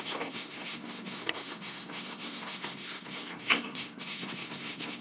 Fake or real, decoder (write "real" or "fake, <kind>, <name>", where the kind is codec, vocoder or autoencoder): fake, codec, SNAC